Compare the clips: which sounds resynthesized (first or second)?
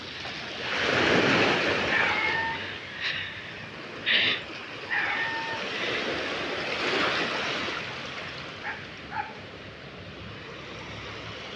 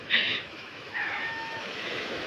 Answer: second